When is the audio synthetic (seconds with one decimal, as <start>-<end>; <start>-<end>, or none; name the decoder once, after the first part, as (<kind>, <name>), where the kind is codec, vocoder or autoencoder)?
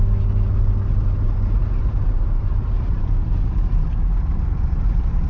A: none